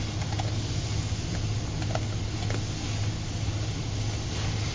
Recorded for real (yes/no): yes